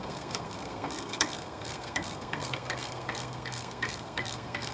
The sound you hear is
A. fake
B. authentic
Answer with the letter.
A